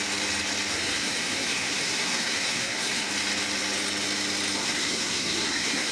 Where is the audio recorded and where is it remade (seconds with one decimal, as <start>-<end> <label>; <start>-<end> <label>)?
0.0-0.7 recorded; 0.7-3.1 remade; 3.1-4.6 recorded; 4.6-5.9 remade